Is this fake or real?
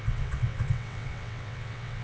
fake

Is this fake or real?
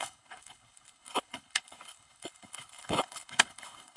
fake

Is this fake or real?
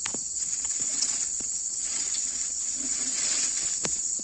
fake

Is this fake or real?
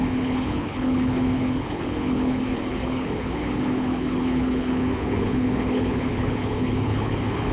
fake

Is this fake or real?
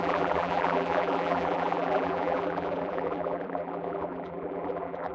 fake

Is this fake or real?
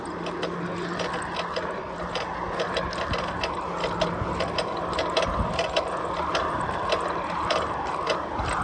real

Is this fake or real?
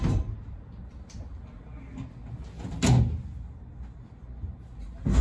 real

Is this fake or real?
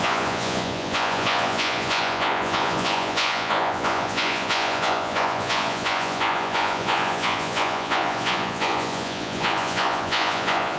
fake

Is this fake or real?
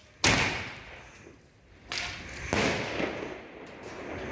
real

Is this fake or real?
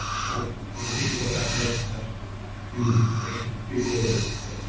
real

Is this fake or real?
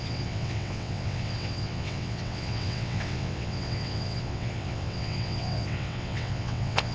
fake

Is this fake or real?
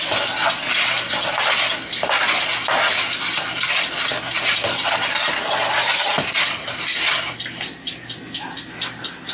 real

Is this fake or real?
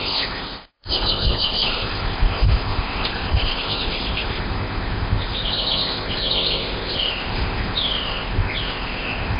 fake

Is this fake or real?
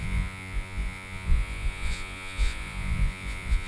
fake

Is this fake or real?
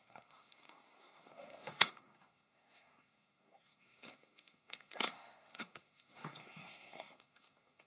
fake